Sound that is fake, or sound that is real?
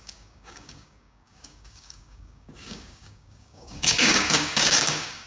fake